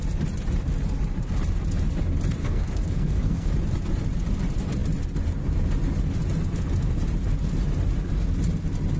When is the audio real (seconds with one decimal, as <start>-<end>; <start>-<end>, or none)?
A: 0.0-2.4; 3.5-9.0